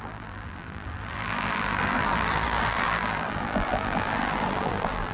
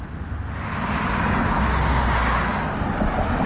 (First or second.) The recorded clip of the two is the second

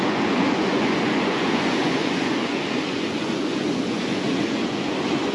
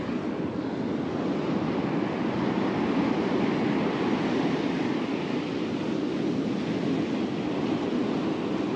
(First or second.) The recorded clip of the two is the second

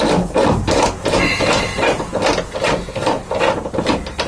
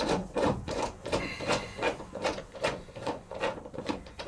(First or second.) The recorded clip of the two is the first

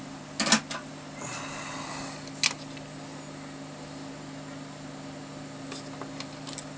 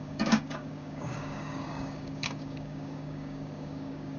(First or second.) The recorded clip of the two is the first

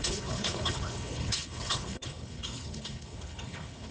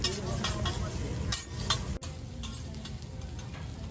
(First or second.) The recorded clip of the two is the second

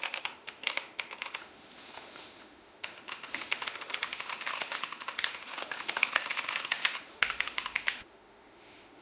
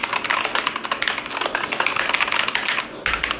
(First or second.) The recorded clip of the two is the second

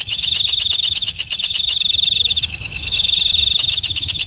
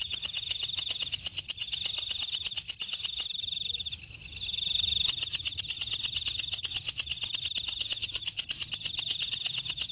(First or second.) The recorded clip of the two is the second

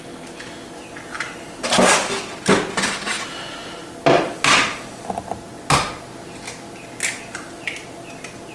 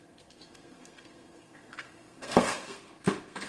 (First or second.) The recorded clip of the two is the first